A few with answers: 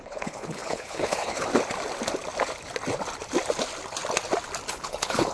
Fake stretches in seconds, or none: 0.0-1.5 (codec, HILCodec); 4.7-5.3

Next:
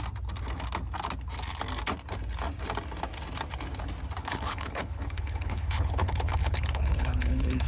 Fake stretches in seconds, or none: 4.2-7.7 (codec, HILCodec)